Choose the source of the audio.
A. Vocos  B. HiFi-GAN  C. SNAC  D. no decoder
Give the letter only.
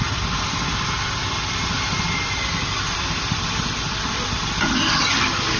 D